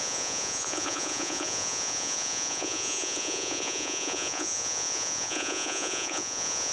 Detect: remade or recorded remade